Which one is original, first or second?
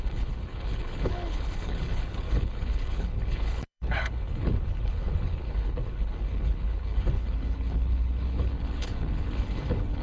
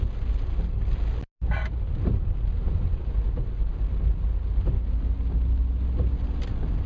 second